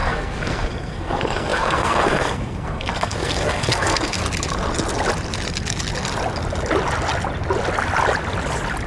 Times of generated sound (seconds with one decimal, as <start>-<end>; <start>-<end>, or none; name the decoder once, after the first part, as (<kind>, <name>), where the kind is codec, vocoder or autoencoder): 0.0-4.2 (codec, SNAC)